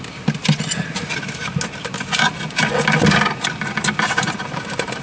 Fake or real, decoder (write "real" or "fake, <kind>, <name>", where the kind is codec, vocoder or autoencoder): real